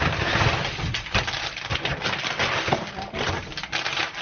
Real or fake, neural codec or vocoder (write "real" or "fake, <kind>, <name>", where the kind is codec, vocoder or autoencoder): real